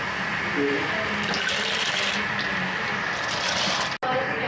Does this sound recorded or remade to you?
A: recorded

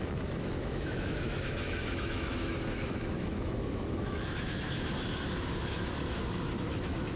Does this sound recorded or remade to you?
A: remade